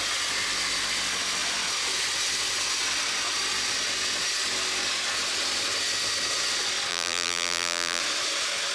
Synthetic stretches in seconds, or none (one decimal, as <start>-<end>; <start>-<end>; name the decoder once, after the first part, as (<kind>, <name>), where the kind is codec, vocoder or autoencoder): 6.9-8.0 (vocoder, BigVGAN v2)